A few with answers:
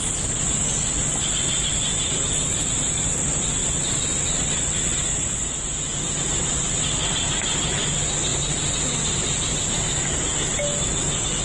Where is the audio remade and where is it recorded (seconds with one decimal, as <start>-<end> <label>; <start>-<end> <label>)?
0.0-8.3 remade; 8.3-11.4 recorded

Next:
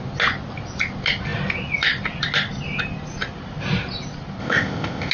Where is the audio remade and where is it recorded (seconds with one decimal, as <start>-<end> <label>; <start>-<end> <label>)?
0.0-4.4 recorded; 4.4-5.1 remade

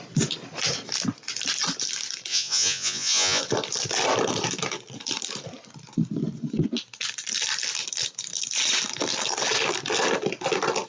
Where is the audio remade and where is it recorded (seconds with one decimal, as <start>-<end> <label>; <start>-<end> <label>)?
0.0-2.3 recorded; 2.3-3.4 remade; 3.4-10.9 recorded

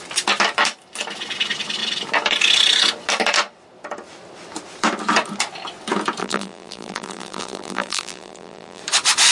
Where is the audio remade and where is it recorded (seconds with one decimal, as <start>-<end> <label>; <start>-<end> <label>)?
0.0-6.2 recorded; 6.2-8.8 remade; 8.8-9.3 recorded

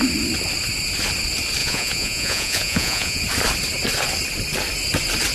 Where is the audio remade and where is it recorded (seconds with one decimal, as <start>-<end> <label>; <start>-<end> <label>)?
0.0-1.6 recorded; 1.6-3.2 remade; 3.2-5.3 recorded

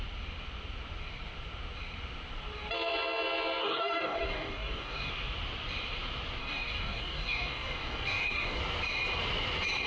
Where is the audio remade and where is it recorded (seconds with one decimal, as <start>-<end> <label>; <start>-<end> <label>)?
0.0-3.6 recorded; 3.6-5.1 remade; 5.1-6.4 recorded; 6.4-8.6 remade; 8.6-9.9 recorded